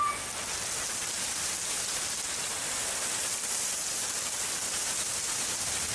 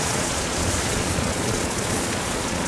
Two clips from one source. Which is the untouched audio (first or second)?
first